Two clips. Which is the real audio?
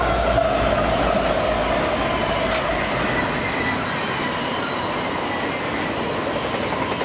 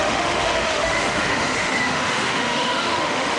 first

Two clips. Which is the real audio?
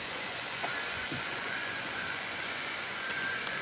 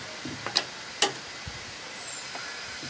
second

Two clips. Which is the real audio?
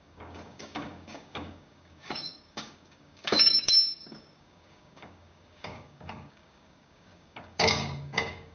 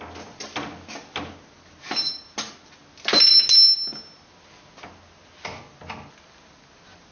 second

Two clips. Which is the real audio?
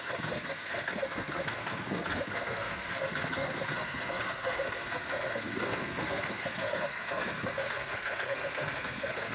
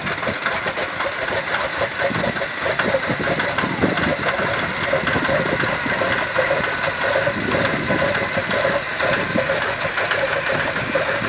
second